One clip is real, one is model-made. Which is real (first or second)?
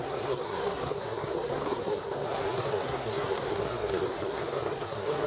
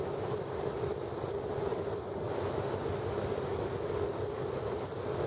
second